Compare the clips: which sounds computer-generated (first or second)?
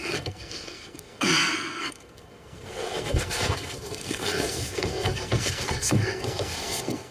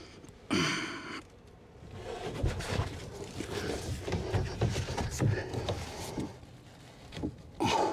first